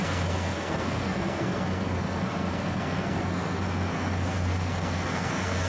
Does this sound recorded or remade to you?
remade